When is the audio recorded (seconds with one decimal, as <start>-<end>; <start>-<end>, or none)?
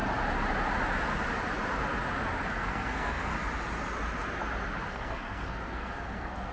0.0-2.5; 3.3-4.9